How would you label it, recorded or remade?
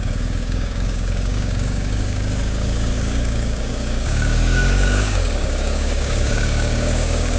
remade